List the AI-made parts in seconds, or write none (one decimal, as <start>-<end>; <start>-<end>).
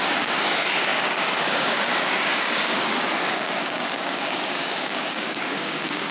0.0-6.1